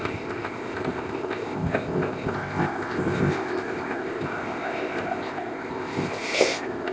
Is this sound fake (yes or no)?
yes